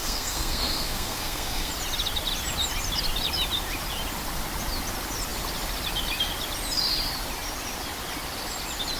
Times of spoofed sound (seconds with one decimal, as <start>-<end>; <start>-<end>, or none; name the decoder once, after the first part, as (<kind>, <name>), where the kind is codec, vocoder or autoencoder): 0.0-1.7 (codec, SNAC)